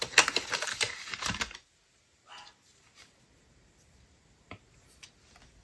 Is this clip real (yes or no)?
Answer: yes